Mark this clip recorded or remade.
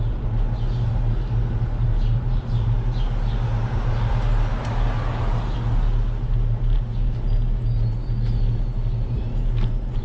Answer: recorded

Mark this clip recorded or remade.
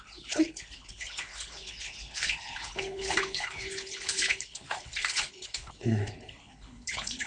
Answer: remade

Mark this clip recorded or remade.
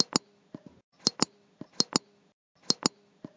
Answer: recorded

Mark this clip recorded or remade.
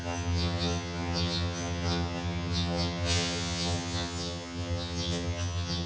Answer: remade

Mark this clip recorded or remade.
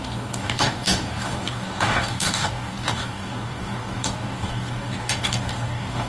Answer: remade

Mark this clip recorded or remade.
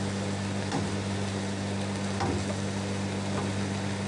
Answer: recorded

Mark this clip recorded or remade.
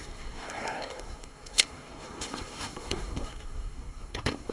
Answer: remade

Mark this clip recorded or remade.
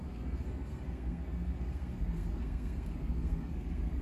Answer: remade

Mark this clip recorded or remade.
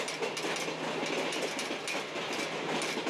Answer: recorded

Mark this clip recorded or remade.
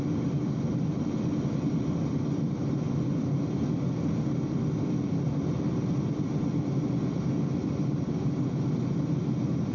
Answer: recorded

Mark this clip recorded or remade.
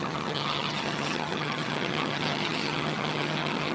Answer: remade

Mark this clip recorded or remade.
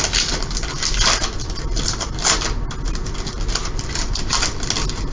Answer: recorded